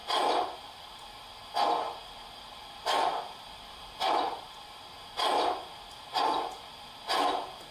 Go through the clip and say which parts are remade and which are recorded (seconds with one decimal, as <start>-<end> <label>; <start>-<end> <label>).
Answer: 0.0-7.7 recorded